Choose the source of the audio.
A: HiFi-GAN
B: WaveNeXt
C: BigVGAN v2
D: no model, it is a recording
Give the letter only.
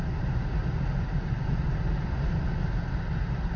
D